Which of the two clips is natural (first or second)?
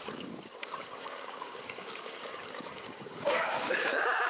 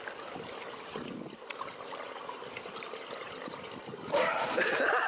second